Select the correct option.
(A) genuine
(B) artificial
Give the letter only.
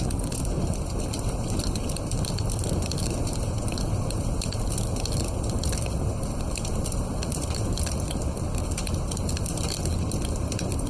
A